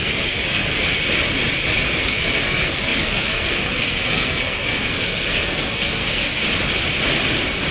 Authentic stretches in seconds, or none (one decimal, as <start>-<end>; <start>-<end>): 0.8-2.0; 6.4-7.7